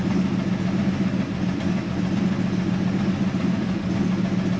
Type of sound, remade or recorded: recorded